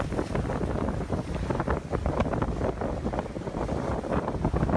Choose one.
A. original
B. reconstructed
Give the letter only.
A